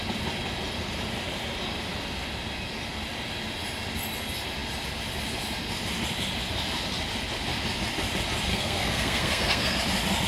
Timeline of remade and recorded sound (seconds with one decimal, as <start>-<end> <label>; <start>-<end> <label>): 0.0-8.5 recorded; 8.5-9.8 remade; 9.8-10.3 recorded